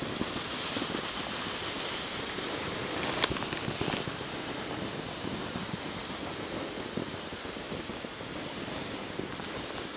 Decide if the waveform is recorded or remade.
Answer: recorded